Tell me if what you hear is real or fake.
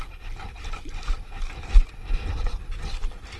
real